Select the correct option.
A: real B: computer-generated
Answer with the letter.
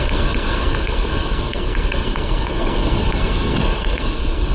B